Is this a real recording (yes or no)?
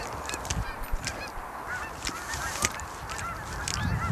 yes